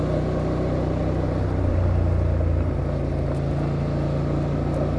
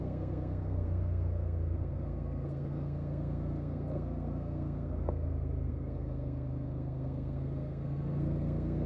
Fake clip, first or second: second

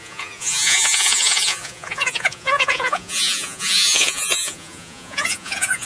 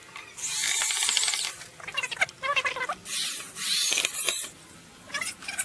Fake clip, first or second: first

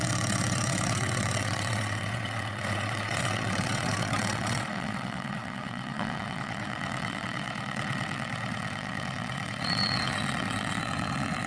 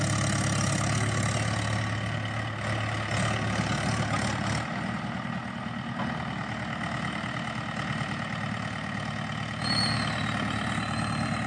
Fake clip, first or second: first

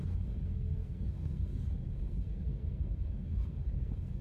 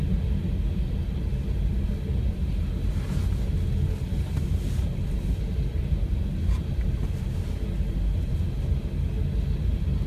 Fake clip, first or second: first